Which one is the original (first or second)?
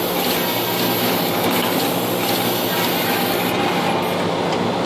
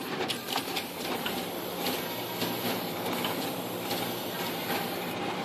first